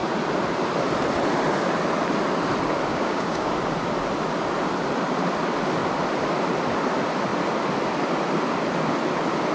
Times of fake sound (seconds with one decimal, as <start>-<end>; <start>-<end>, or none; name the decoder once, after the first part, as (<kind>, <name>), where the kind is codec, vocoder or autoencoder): 2.9-3.5 (codec, DAC)